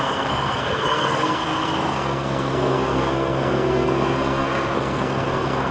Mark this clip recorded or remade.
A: remade